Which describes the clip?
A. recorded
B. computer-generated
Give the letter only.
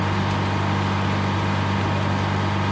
A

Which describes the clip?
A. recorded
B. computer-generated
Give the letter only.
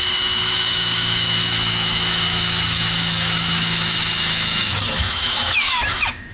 B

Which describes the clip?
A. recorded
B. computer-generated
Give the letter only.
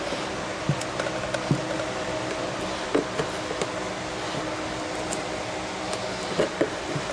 A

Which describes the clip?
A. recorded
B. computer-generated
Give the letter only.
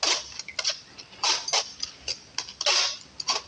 A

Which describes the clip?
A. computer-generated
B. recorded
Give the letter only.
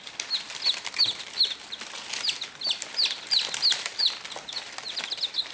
B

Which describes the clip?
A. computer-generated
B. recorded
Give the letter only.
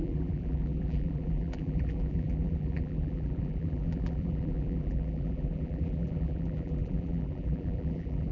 A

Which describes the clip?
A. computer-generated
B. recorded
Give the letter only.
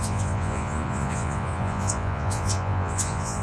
A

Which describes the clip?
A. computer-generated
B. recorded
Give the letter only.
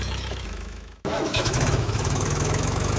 A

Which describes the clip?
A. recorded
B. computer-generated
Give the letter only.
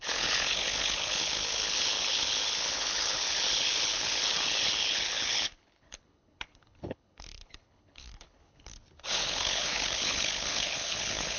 B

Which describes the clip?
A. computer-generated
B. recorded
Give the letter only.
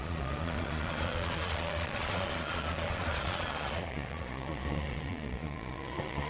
A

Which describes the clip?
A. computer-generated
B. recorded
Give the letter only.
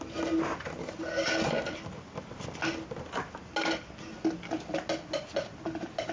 B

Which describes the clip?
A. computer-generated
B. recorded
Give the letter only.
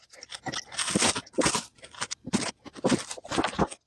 B